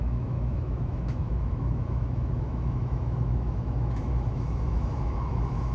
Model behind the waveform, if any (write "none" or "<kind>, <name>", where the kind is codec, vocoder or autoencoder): autoencoder, DAC-VAE